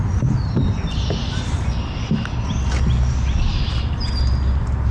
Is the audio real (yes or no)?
yes